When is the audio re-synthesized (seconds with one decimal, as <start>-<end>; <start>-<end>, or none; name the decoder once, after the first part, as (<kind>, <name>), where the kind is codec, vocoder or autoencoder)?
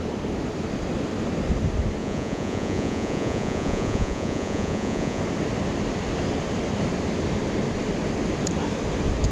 2.0-5.2 (vocoder, Vocos)